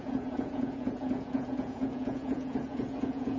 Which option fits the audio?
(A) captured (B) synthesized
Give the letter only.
B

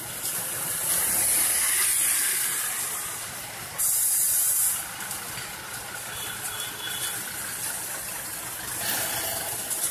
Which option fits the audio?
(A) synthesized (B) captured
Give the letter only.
B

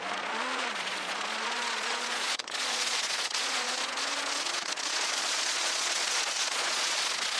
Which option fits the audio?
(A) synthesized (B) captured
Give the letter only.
A